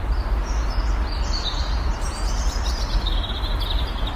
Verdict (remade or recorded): recorded